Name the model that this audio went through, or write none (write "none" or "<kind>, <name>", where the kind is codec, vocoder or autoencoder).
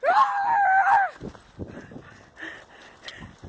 none